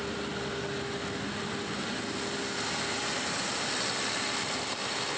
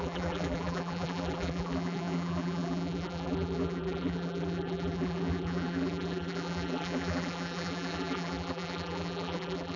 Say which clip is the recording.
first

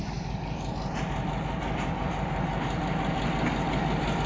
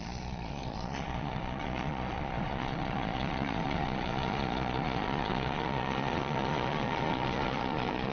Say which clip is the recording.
first